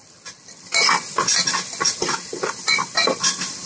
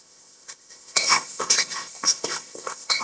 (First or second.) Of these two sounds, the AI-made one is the second